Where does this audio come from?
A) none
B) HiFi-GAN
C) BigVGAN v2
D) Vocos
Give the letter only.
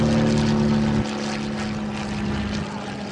A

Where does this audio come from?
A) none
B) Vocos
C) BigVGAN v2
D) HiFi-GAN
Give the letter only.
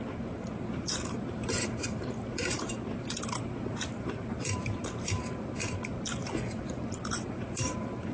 C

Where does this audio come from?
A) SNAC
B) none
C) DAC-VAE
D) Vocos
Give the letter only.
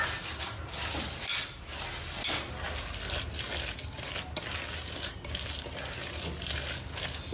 B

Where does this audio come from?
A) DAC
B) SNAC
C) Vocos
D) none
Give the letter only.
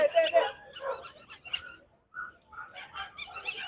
D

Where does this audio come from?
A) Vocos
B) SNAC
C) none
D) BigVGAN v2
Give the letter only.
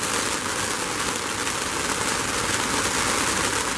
C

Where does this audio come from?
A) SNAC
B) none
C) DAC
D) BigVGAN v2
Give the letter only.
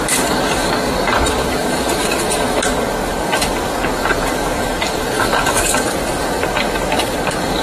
C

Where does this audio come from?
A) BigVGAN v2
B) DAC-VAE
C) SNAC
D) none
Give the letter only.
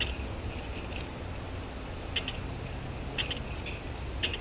D